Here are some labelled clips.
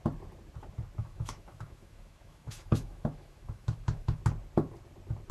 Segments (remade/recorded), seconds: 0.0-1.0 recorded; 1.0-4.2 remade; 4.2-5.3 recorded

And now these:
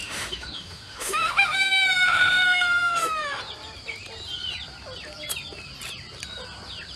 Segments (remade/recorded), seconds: 0.0-3.4 remade; 3.4-7.0 recorded

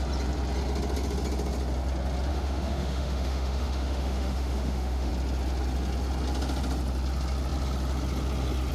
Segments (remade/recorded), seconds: 0.0-2.3 recorded; 2.3-5.1 remade; 5.1-8.7 recorded

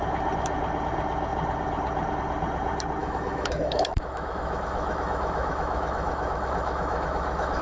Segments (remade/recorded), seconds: 0.0-3.0 recorded; 3.0-7.6 remade

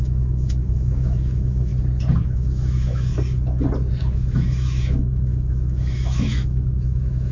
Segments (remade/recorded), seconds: 0.0-1.7 remade; 1.7-2.2 recorded; 2.2-3.1 remade; 3.1-4.0 recorded; 4.0-7.3 remade

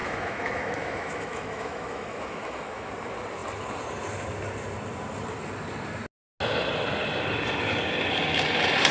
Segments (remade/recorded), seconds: 0.0-2.9 remade; 2.9-8.9 recorded

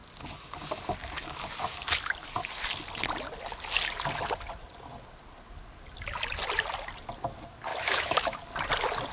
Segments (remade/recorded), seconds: 0.0-7.7 recorded; 7.7-8.4 remade; 8.4-9.1 recorded

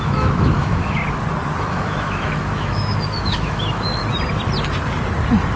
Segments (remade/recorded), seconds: 0.0-1.0 remade; 1.0-1.6 recorded; 1.6-4.0 remade; 4.0-5.6 recorded